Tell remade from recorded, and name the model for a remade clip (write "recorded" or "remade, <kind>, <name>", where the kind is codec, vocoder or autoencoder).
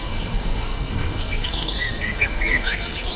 remade, codec, SNAC